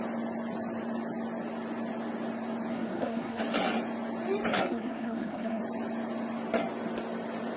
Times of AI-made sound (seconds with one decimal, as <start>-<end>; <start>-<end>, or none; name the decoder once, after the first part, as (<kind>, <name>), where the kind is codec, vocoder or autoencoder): 2.7-3.4 (codec, SNAC); 4.5-5.6

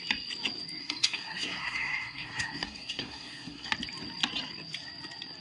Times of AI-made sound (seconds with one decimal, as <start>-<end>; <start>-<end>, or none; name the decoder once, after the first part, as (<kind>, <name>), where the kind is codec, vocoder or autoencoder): 0.8-3.7 (codec, SNAC)

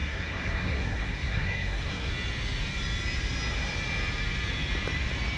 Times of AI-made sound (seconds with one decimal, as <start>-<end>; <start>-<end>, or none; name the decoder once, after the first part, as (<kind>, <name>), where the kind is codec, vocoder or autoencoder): 0.0-2.1 (codec, SNAC)

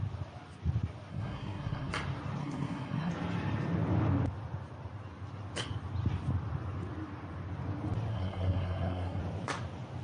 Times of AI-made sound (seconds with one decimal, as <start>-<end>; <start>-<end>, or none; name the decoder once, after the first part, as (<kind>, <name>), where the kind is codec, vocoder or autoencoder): 1.1-1.9 (codec, SNAC); 2.4-3.1; 8.1-9.2

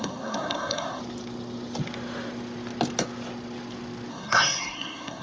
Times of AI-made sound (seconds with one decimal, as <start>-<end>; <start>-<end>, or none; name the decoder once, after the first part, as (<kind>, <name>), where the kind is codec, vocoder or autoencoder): 0.0-1.0 (codec, SNAC); 4.1-5.2

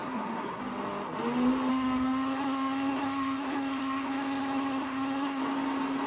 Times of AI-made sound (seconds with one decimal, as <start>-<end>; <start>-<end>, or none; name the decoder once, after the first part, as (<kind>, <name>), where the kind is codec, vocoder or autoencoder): 0.0-0.6 (codec, SNAC); 1.7-5.4

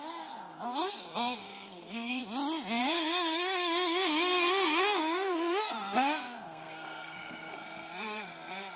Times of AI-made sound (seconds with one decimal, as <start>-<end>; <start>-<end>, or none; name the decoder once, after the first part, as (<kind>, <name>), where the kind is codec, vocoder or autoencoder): 0.0-2.2 (codec, SNAC); 2.8-8.8

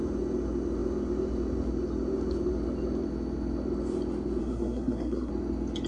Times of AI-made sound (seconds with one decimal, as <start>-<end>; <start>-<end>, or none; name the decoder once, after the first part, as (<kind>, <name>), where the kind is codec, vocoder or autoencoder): 4.4-5.3 (codec, SNAC)